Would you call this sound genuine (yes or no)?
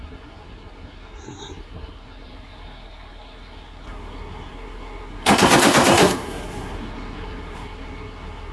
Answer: no